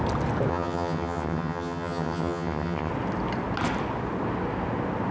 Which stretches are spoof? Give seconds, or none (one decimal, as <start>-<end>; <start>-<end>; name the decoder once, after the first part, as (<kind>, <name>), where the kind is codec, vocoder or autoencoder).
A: 0.5-2.9 (vocoder, HiFi-GAN)